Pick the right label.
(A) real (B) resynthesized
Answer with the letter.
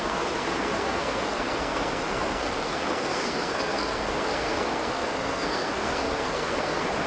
B